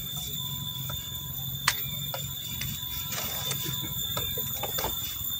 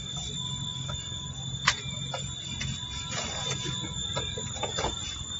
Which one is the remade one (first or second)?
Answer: first